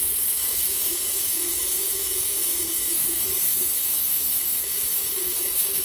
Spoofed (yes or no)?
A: yes